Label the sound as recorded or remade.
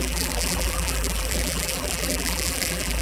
remade